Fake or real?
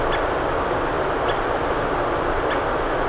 real